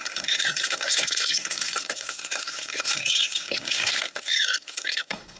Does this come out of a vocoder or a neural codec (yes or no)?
yes